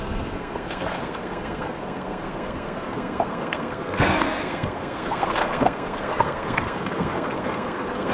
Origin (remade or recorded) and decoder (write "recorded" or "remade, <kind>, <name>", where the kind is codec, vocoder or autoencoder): remade, codec, SNAC